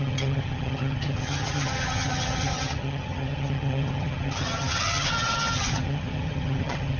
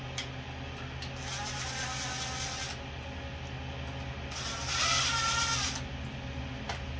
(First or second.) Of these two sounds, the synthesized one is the first